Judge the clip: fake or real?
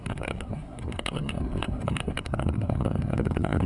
fake